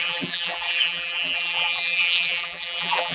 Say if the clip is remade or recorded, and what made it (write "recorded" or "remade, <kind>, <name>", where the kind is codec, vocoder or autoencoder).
remade, vocoder, BigVGAN v2